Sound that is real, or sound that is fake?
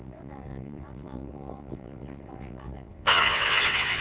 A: fake